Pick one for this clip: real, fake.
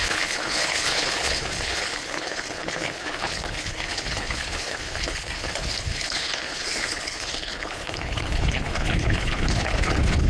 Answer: fake